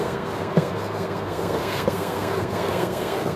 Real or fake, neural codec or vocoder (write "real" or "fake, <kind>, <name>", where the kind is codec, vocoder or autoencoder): fake, codec, SNAC